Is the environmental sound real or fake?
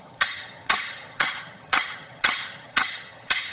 fake